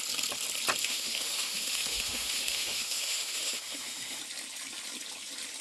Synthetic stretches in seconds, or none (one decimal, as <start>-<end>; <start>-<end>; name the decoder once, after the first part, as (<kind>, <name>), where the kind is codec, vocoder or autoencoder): 0.8-4.2 (autoencoder, DAC-VAE)